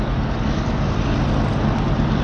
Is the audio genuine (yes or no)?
yes